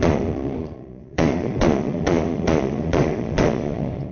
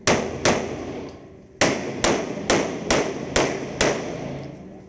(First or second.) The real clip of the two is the second